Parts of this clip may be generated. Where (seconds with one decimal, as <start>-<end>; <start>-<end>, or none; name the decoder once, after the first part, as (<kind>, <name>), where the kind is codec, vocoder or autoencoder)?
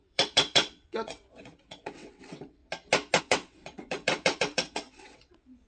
0.0-2.6 (vocoder, WaveNeXt); 3.2-5.7